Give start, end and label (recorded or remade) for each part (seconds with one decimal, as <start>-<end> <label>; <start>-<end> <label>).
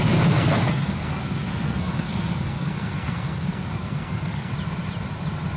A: 0.0-4.5 remade; 4.5-5.6 recorded